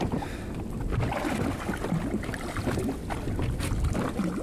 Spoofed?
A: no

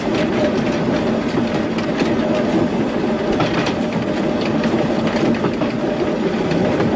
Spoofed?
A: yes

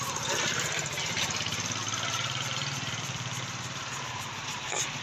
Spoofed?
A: yes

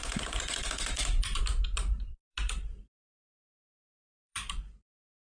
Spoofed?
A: yes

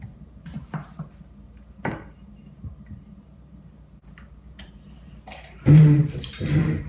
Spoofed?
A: yes